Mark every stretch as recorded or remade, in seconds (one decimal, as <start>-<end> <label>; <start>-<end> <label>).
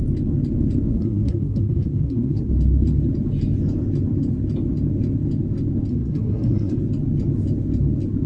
0.0-0.9 recorded; 0.9-2.5 remade; 2.5-5.9 recorded; 5.9-6.8 remade; 6.8-8.3 recorded